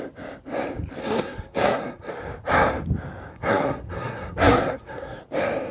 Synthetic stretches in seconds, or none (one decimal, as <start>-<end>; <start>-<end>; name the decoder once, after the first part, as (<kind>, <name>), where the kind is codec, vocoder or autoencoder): 1.0-2.1 (codec, SNAC); 3.3-5.2

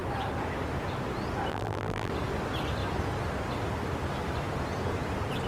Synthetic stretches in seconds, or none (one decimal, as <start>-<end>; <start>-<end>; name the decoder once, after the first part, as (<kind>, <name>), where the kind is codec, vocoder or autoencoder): 1.5-2.1 (vocoder, BigVGAN v2)

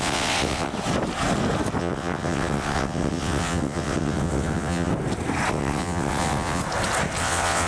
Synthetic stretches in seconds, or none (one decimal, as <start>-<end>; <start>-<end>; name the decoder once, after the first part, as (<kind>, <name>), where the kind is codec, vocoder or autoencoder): 0.0-0.7 (vocoder, WaveNeXt); 1.8-4.9; 5.5-6.6; 7.2-7.7

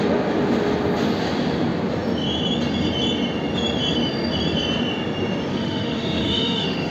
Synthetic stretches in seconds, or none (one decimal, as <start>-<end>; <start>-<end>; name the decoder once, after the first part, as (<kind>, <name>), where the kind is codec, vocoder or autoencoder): 5.5-6.9 (autoencoder, DAC-VAE)